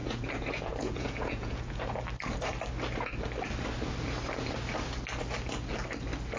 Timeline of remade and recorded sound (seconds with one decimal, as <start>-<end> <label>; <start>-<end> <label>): 0.0-2.0 remade; 2.0-6.4 recorded

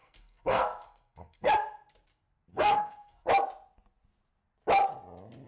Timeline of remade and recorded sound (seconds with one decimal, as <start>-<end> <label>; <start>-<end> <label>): 0.0-1.5 remade; 1.5-2.5 recorded; 2.5-3.3 remade; 3.3-5.5 recorded

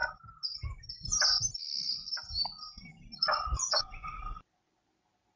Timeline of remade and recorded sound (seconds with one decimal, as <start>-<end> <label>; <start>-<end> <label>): 0.0-3.6 recorded; 3.6-4.2 remade; 4.2-5.4 recorded

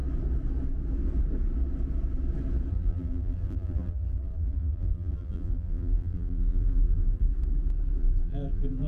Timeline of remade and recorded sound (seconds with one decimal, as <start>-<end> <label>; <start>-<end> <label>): 0.0-2.7 recorded; 2.7-7.3 remade; 7.3-8.0 recorded; 8.0-8.9 remade

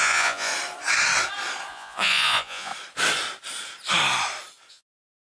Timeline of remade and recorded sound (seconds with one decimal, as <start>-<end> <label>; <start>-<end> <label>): 0.0-0.5 remade; 0.5-1.7 recorded; 1.7-2.7 remade; 2.7-4.7 recorded; 4.7-5.2 remade